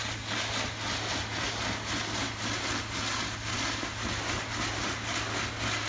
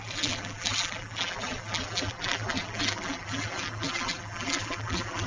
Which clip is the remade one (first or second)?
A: second